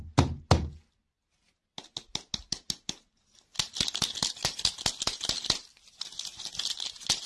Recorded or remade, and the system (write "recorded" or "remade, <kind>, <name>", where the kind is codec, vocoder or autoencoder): recorded